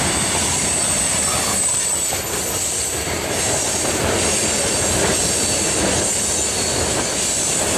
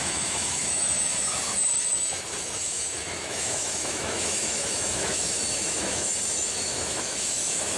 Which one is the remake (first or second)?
second